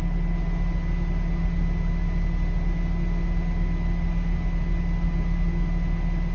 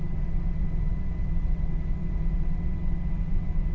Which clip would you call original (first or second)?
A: first